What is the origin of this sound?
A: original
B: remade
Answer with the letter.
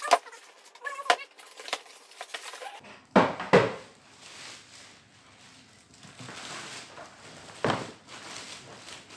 A